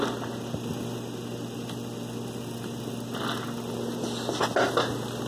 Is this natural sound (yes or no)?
yes